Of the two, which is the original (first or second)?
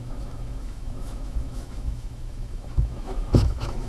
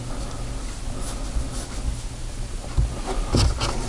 second